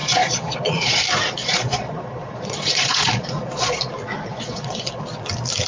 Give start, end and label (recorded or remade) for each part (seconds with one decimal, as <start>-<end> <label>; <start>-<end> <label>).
0.0-1.0 remade; 1.0-1.4 recorded; 1.4-3.9 remade; 3.9-4.3 recorded; 4.3-5.0 remade; 5.0-5.7 recorded